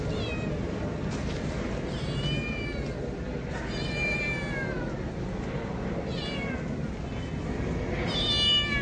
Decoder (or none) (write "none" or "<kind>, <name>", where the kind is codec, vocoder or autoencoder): none